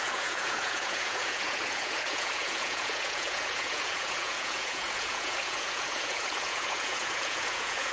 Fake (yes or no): yes